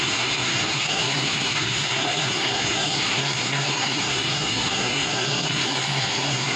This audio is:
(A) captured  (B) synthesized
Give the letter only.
B